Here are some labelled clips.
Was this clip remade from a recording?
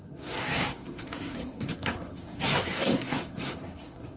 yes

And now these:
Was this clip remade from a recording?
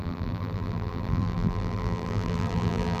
yes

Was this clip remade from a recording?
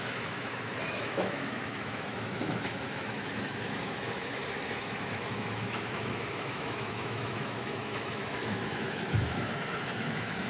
yes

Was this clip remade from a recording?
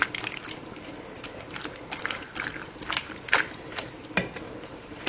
no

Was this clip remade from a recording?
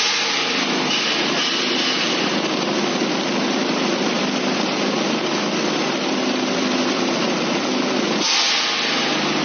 no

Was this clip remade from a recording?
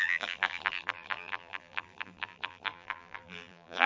yes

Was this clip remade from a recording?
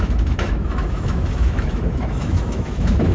yes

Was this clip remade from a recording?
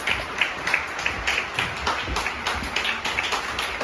no